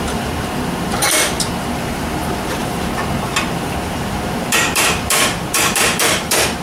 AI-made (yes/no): yes